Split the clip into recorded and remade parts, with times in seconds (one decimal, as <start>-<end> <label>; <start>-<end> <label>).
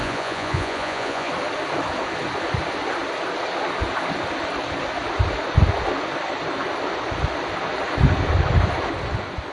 0.0-1.3 remade; 1.3-9.5 recorded